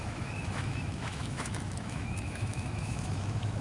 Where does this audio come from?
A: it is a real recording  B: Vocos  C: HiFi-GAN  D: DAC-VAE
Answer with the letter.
D